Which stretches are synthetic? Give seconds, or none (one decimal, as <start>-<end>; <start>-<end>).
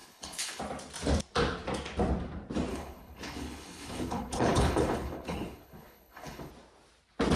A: 0.0-0.6; 2.7-6.5